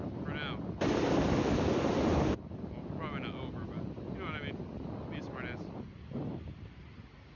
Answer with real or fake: real